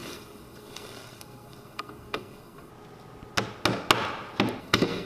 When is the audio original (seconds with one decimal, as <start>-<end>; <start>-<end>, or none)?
2.7-4.6

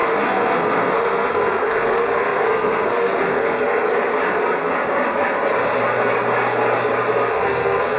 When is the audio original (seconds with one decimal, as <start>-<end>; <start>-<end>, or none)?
3.9-7.3

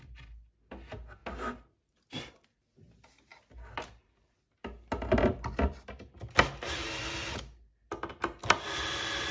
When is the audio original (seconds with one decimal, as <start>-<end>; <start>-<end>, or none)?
0.0-9.3

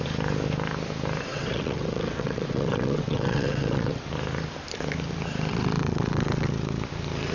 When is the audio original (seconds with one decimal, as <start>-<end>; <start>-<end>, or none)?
0.0-1.3; 4.0-5.5; 6.5-7.3

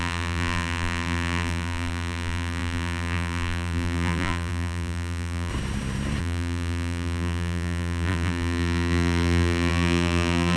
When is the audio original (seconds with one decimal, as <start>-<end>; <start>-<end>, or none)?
5.5-6.2

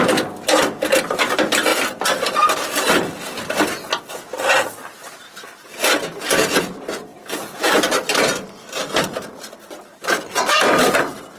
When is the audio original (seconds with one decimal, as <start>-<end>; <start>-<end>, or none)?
0.0-1.7; 2.5-7.1; 10.6-11.4